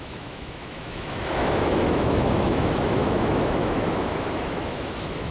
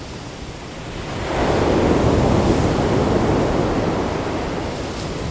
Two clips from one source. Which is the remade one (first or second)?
first